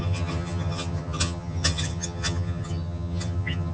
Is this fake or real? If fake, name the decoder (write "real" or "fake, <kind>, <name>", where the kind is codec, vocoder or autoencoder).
fake, vocoder, HiFi-GAN